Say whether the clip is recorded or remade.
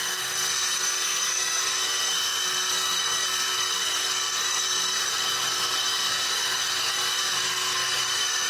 remade